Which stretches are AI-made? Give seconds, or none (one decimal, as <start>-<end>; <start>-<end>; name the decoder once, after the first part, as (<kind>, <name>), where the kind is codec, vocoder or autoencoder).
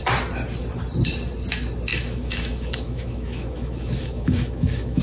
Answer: 1.9-5.0 (autoencoder, DAC-VAE)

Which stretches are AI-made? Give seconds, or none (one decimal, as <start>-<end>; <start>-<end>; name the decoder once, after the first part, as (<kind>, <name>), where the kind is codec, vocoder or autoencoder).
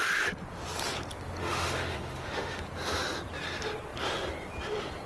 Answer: 1.4-2.6 (autoencoder, DAC-VAE)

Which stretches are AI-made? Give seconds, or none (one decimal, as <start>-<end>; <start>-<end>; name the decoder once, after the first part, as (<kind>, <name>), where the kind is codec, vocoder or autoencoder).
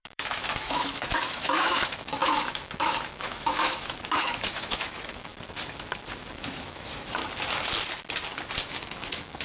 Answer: 0.0-5.3 (autoencoder, DAC-VAE); 6.3-7.2; 8.7-9.4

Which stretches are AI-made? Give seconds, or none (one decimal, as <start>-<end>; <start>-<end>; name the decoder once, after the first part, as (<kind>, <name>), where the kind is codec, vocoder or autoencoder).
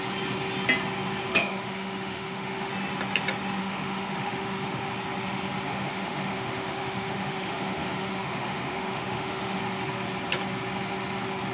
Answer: 1.3-2.7 (autoencoder, DAC-VAE); 3.6-4.9; 5.7-9.6